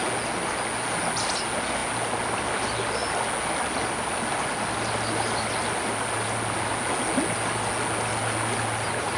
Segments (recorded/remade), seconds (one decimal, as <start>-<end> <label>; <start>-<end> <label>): 0.0-9.2 recorded